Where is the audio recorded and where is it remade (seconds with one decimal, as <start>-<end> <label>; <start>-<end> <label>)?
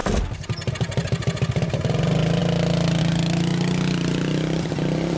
0.0-5.2 recorded